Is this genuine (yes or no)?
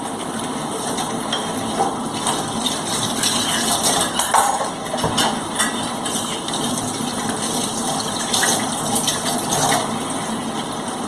yes